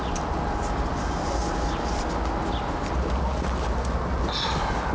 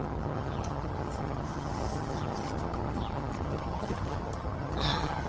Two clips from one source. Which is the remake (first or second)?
second